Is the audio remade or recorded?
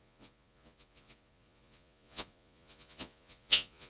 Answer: remade